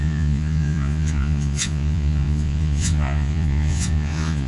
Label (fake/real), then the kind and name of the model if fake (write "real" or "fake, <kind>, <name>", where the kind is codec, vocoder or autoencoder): fake, vocoder, Vocos